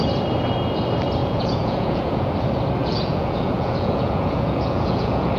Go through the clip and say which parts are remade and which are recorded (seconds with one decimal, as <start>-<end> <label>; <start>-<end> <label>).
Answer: 0.0-1.2 recorded; 1.2-2.3 remade; 2.3-2.8 recorded; 2.8-5.4 remade